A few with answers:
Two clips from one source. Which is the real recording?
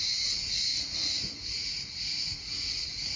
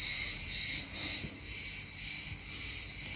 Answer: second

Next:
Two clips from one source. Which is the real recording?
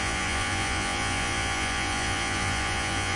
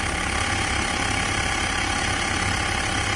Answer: second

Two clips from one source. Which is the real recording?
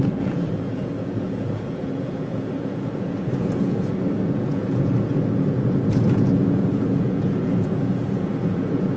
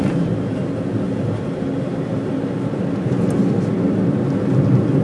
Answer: second